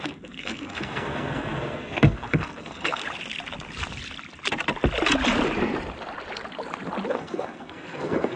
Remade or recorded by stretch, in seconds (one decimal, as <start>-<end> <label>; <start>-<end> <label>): 0.0-3.0 remade; 3.0-7.1 recorded; 7.1-8.4 remade